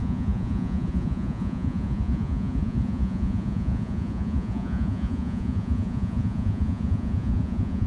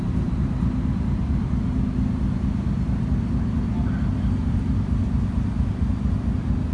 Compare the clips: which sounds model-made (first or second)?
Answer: first